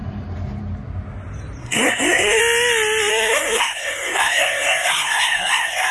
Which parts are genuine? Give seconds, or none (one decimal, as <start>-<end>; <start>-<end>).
0.0-1.6; 2.4-3.1